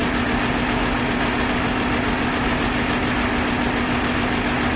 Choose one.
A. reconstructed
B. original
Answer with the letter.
B